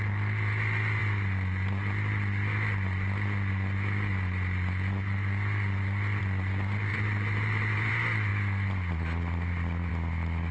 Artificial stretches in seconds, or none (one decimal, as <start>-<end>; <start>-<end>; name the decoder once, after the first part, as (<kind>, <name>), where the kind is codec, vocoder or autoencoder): 6.9-7.9 (vocoder, BigVGAN v2)